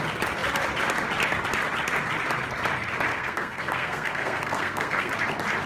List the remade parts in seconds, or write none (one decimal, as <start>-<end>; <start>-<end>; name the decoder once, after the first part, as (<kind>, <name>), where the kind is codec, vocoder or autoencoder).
3.1-5.1 (codec, SNAC)